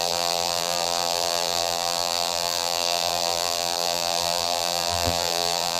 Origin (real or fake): fake